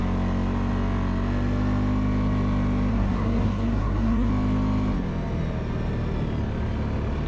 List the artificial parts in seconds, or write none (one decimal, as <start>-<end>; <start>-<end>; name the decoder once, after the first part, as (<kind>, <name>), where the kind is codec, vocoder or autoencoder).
2.9-4.3 (codec, SNAC)